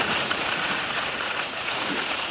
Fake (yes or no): yes